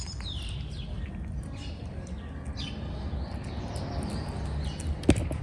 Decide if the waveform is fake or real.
real